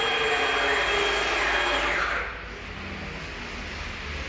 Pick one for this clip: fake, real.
real